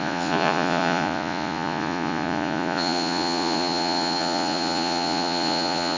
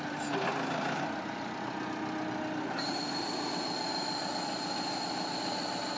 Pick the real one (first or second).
second